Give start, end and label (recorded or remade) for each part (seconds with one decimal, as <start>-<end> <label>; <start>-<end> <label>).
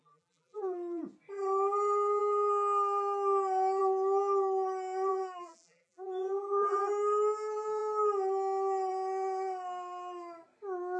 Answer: 0.0-1.0 remade; 1.0-5.1 recorded; 5.1-6.8 remade; 6.8-11.0 recorded